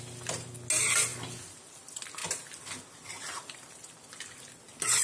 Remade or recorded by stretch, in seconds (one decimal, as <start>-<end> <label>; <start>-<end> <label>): 0.0-5.0 recorded